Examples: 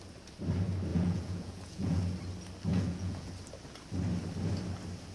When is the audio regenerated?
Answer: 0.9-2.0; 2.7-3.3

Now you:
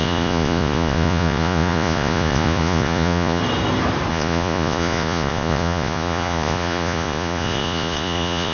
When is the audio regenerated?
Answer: 0.0-3.4; 4.1-8.5

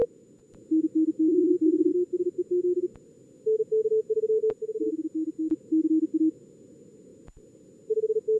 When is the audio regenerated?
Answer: 0.0-0.5

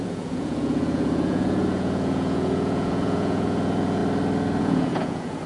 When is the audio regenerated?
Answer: 0.0-4.0; 4.6-5.5

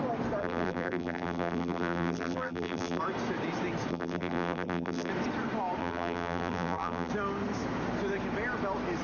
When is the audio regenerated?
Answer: 0.4-3.0; 3.9-5.1; 5.8-7.1

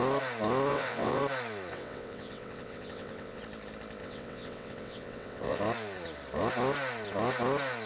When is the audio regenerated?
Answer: 0.7-1.2; 1.7-3.4; 4.0-5.6

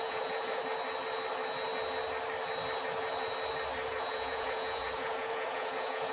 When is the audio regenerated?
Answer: 0.0-0.6; 3.9-6.1

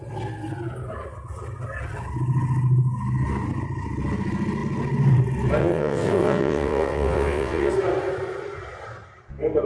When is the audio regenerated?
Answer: 5.6-7.7